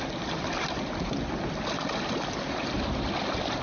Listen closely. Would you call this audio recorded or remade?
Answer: recorded